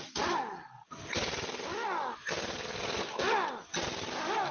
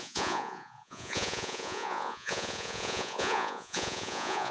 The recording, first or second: first